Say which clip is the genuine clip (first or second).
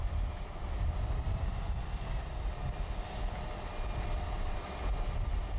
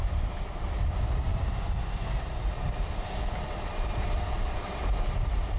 first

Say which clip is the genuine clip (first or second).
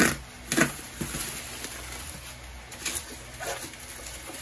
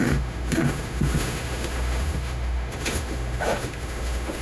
first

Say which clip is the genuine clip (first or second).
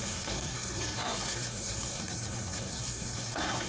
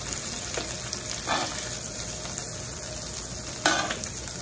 second